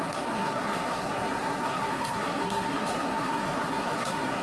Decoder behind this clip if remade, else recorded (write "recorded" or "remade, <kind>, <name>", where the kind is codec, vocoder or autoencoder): remade, codec, SNAC